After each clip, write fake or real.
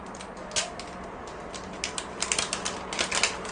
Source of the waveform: real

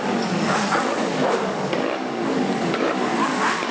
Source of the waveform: fake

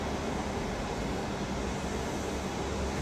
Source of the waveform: real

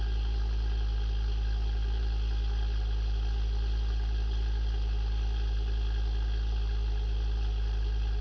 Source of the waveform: real